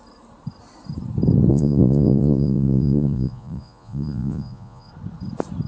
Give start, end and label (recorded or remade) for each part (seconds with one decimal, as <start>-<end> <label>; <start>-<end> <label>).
0.0-1.5 recorded; 1.5-4.9 remade; 4.9-5.7 recorded